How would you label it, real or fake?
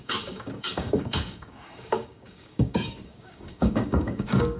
fake